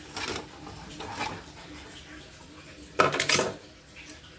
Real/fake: real